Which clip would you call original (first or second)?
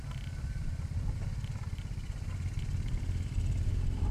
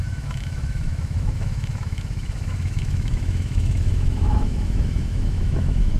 first